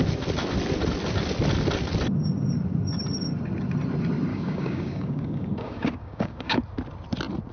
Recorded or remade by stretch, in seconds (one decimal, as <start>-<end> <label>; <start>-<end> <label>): 0.0-4.3 recorded; 4.3-6.6 remade; 6.6-7.5 recorded